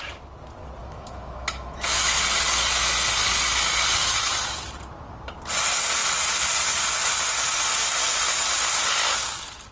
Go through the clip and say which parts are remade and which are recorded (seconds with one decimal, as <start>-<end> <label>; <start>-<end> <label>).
0.0-0.8 recorded; 0.8-2.2 remade; 2.2-4.0 recorded; 4.0-4.7 remade; 4.7-9.7 recorded